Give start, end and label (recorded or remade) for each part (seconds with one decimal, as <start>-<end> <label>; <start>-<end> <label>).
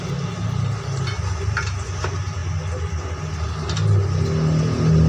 0.0-5.1 recorded